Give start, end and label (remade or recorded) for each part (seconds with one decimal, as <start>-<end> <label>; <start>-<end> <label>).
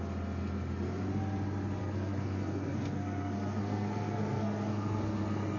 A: 0.0-1.8 recorded; 1.8-5.6 remade